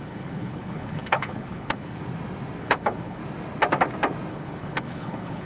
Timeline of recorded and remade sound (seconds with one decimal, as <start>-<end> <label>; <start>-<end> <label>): 0.0-2.0 remade; 2.0-2.6 recorded; 2.6-3.2 remade; 3.2-4.3 recorded; 4.3-5.5 remade